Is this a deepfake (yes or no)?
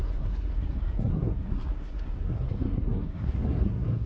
yes